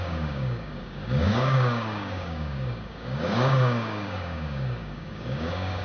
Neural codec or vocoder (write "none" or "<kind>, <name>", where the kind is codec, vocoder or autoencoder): codec, DAC